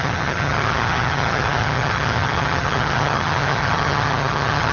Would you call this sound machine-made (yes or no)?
yes